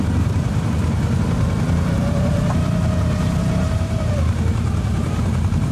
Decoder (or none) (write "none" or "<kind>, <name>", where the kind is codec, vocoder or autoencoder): vocoder, BigVGAN v2